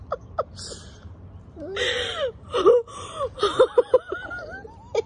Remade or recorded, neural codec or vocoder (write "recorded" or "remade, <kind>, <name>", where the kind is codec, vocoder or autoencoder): remade, vocoder, BigVGAN v2